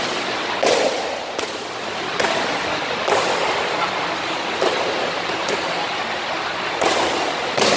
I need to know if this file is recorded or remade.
recorded